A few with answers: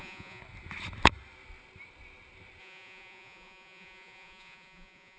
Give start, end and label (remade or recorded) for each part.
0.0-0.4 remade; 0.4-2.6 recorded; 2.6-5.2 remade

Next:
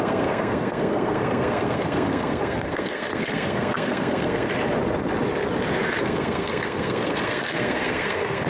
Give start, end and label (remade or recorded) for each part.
0.0-4.5 remade; 4.5-6.0 recorded; 6.0-8.5 remade